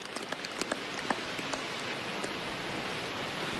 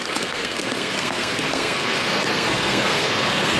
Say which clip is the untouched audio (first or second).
first